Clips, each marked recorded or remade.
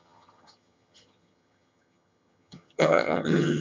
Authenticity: remade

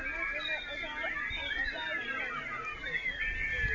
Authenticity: recorded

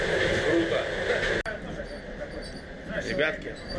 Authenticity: recorded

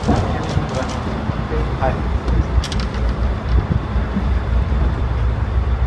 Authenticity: remade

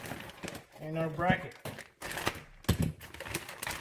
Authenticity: recorded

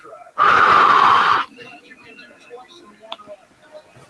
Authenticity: recorded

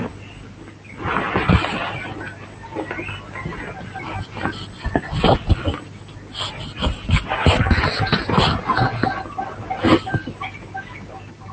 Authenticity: recorded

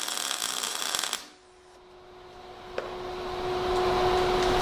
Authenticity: recorded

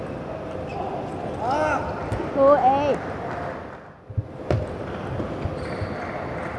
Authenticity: recorded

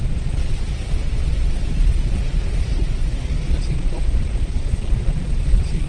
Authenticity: remade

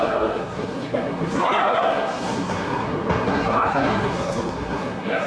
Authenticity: remade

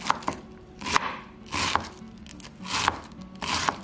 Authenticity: recorded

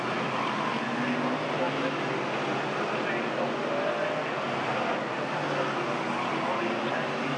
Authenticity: recorded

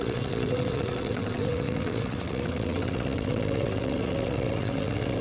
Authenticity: remade